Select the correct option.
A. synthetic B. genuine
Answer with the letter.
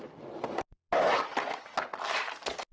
B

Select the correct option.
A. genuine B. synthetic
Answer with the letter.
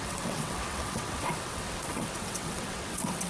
B